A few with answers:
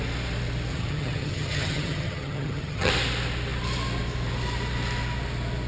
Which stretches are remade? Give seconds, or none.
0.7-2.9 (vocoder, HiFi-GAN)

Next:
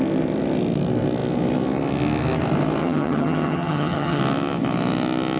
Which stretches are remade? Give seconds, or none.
2.8-4.2 (vocoder, HiFi-GAN)